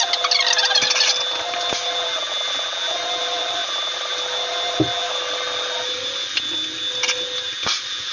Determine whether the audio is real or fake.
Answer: real